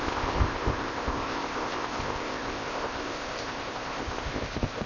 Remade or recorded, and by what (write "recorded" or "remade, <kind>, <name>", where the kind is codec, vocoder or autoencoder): remade, codec, ZipCodec